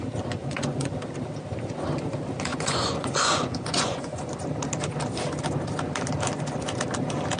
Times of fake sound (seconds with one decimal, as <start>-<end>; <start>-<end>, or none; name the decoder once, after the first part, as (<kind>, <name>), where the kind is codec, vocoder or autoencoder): 0.4-0.9 (vocoder, Vocos); 2.5-4.3